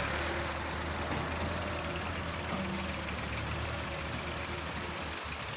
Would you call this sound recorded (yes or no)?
yes